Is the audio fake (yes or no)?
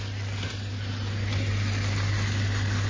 no